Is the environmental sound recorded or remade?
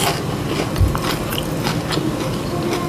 recorded